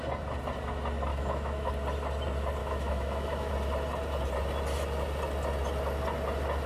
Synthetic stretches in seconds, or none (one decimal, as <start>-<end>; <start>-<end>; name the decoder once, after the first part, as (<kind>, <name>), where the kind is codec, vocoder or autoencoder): 1.1-1.7 (autoencoder, DAC-VAE); 2.6-3.5